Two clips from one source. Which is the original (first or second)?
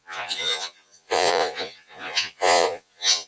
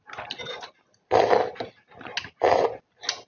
second